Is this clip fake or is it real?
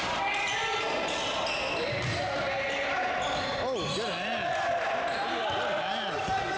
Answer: real